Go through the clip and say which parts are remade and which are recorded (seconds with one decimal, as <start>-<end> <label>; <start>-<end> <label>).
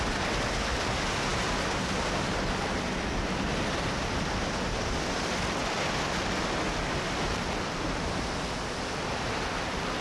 0.0-10.0 recorded